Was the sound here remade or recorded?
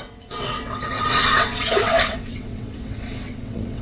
remade